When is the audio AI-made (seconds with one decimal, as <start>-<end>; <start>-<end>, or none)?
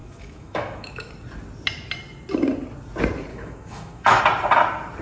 0.0-1.1; 3.3-4.2